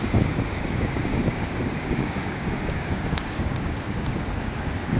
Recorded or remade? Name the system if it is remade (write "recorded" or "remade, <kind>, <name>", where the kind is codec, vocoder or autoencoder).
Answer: remade, codec, DAC